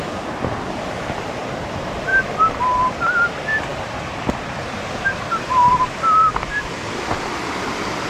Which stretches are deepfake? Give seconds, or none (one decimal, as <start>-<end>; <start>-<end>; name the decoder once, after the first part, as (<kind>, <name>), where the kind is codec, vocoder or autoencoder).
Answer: 0.0-2.1 (vocoder, BigVGAN v2); 2.8-8.1